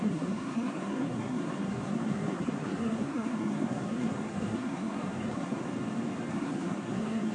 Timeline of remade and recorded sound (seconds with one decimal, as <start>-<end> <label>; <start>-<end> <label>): 0.0-5.7 remade; 5.7-6.3 recorded; 6.3-7.3 remade